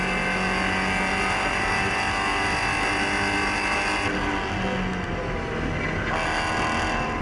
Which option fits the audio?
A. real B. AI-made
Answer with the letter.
A